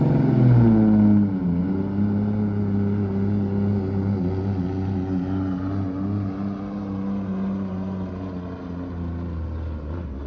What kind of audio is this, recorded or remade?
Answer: recorded